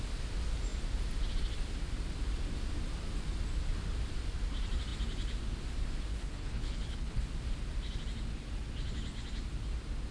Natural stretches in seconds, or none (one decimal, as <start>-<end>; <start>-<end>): 0.0-6.1; 7.2-10.1